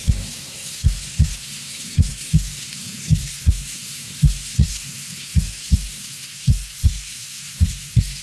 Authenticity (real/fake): fake